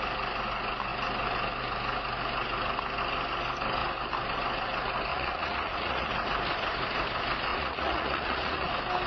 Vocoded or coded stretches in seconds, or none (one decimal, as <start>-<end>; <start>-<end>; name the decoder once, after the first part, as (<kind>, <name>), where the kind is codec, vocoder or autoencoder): 5.1-6.1 (vocoder, Vocos); 7.5-8.7